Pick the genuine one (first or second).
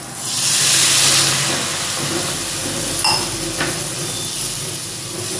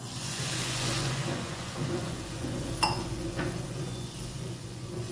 first